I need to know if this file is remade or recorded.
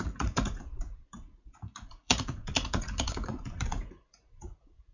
remade